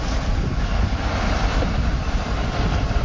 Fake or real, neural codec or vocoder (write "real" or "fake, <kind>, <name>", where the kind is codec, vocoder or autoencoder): real